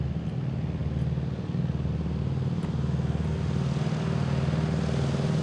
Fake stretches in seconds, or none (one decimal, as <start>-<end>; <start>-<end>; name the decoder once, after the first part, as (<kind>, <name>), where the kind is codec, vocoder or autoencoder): none